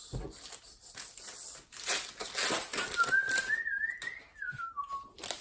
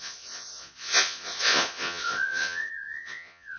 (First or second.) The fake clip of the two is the second